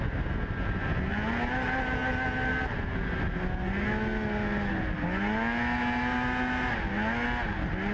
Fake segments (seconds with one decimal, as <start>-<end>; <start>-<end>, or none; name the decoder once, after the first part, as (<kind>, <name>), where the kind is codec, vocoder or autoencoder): none